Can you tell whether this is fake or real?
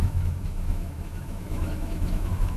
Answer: fake